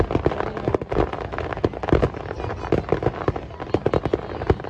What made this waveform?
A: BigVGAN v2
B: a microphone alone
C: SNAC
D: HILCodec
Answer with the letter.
B